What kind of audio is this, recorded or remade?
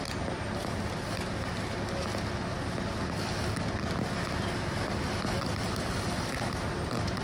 recorded